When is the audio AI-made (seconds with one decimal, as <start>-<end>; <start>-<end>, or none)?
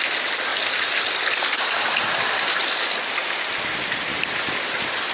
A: none